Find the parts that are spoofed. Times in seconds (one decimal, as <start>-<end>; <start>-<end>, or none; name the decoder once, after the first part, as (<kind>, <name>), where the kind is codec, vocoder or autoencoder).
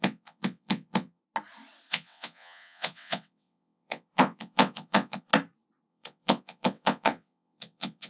0.0-1.2 (vocoder, WaveNeXt); 1.9-5.3; 5.9-8.1